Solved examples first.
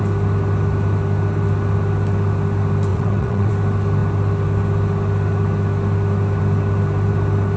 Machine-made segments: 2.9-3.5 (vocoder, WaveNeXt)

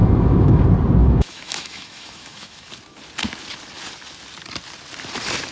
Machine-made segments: 0.0-0.6 (autoencoder, DAC-VAE); 1.0-2.7